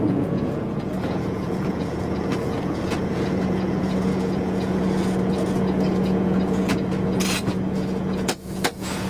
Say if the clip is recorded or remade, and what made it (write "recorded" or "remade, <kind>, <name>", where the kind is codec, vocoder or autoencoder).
remade, vocoder, Vocos